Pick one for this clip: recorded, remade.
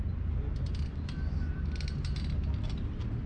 recorded